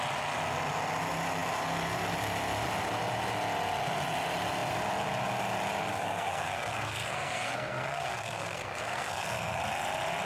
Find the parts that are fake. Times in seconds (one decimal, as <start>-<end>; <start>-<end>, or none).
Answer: 5.9-9.6

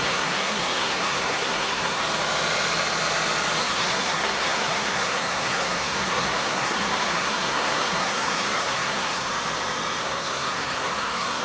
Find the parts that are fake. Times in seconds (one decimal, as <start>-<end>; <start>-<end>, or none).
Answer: 0.0-2.0; 3.6-9.3; 10.0-11.4

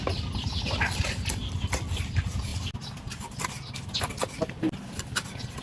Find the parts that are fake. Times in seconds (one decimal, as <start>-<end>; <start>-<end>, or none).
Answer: none

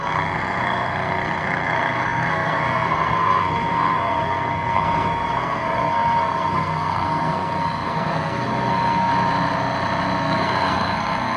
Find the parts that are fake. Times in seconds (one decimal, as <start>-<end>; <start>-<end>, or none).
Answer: 0.0-9.1; 10.2-11.4